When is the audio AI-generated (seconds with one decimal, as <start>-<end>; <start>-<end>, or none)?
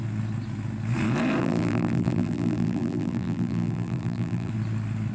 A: 1.4-4.5